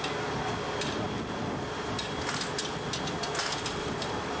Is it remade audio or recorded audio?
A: recorded